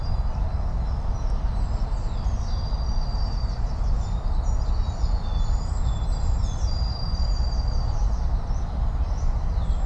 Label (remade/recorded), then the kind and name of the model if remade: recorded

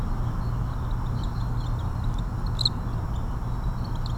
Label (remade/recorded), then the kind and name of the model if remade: recorded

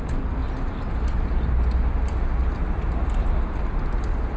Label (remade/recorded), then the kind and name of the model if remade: recorded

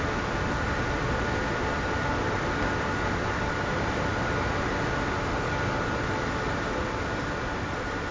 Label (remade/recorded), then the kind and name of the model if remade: recorded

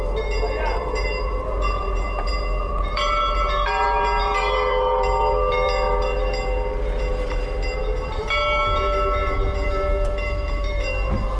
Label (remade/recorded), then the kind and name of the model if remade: remade, vocoder, BigVGAN v2